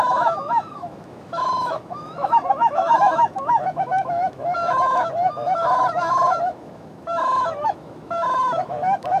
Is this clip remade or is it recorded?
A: remade